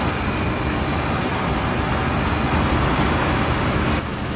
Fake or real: real